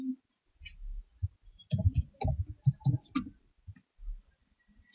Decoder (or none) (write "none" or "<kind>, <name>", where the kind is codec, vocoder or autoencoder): none